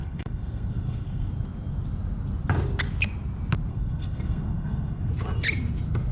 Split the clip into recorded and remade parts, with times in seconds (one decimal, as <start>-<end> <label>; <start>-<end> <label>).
0.0-1.3 remade; 1.3-3.7 recorded; 3.7-5.1 remade; 5.1-6.1 recorded